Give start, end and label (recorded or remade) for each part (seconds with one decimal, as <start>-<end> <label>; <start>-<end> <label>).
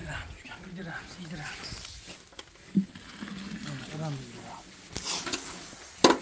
0.0-6.2 recorded